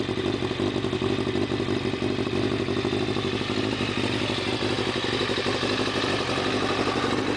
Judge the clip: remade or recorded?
recorded